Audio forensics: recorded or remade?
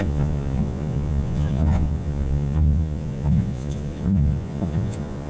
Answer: remade